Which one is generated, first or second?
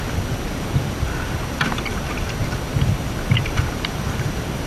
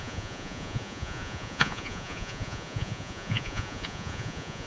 second